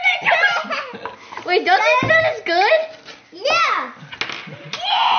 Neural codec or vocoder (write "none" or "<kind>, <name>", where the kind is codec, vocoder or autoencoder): none